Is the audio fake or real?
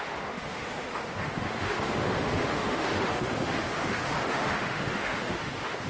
fake